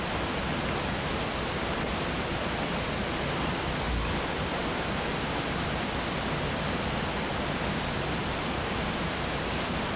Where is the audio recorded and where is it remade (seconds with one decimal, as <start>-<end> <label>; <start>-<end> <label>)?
0.0-10.0 recorded